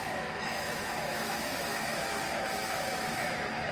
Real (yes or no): no